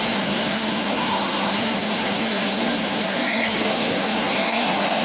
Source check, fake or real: fake